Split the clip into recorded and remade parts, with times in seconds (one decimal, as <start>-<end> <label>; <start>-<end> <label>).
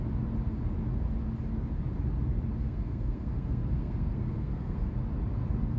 0.0-2.6 recorded; 2.6-4.9 remade; 4.9-5.8 recorded